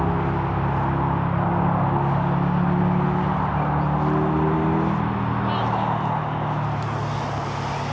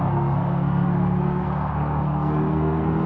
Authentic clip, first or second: first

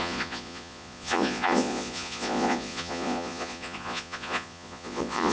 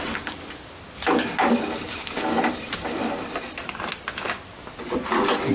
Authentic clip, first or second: second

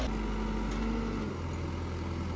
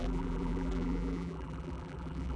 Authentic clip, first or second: first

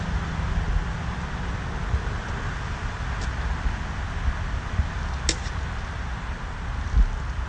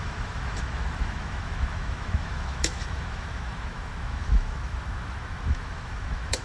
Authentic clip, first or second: first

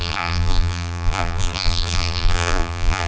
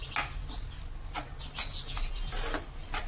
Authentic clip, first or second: second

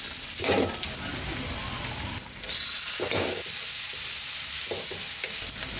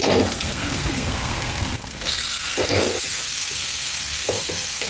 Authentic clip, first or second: first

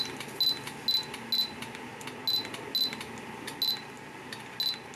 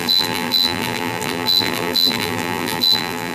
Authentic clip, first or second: first